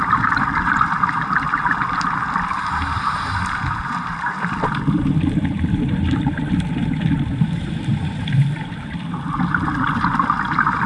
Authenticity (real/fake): fake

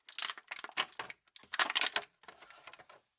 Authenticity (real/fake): real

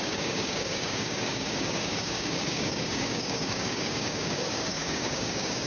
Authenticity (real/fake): fake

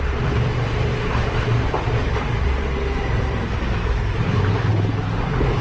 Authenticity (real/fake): fake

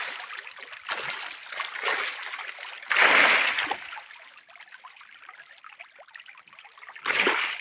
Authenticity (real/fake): real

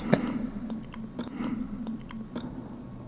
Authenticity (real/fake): real